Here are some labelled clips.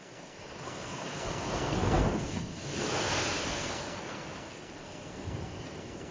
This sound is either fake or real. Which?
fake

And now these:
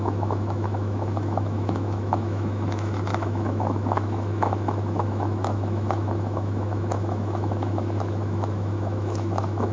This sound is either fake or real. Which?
fake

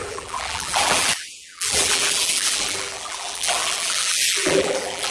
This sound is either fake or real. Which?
fake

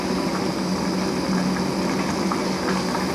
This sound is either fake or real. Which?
real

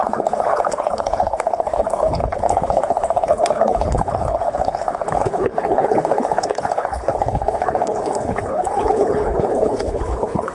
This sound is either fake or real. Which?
fake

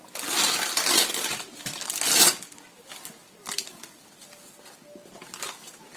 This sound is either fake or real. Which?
real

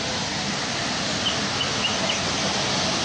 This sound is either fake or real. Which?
real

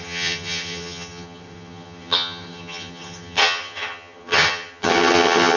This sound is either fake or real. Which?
fake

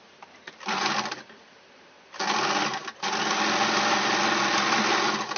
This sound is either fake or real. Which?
real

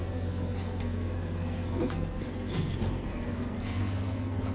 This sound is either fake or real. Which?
fake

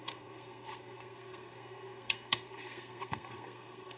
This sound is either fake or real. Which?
fake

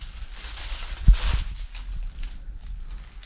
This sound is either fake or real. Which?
real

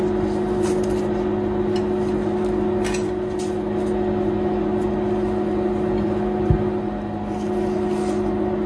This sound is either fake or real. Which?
real